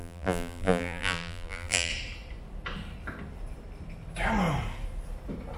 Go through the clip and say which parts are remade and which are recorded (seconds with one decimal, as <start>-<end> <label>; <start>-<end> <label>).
0.0-1.9 remade; 1.9-5.6 recorded